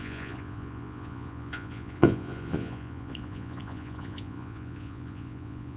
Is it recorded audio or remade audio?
remade